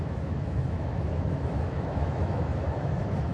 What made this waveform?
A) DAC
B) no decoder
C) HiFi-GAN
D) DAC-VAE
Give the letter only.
D